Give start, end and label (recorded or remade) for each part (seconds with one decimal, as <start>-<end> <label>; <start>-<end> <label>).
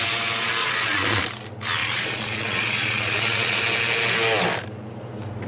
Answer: 0.0-0.6 recorded; 0.6-1.2 remade; 1.2-1.8 recorded; 1.8-3.6 remade; 3.6-5.5 recorded